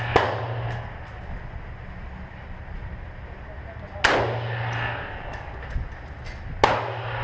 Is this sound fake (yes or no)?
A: no